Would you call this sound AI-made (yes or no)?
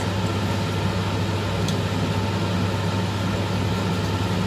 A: no